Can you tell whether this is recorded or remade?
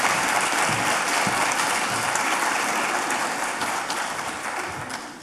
remade